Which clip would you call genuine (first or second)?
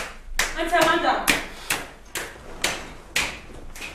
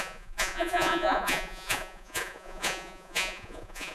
first